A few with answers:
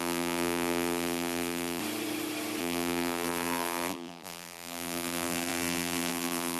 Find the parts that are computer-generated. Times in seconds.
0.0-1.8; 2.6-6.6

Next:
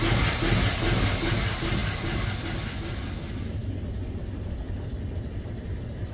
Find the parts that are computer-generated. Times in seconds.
none

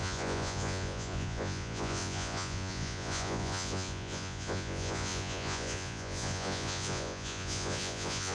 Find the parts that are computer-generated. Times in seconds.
0.0-8.3

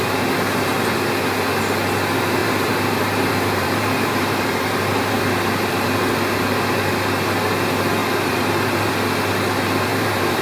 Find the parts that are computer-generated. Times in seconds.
2.4-5.2; 8.0-8.9; 9.9-10.4

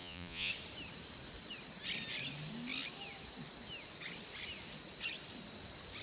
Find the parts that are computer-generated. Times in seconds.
0.0-0.5

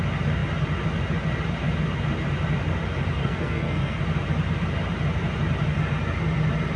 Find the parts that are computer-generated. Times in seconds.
3.2-4.0